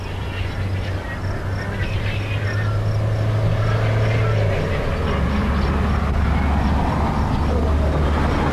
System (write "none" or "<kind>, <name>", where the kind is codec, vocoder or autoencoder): none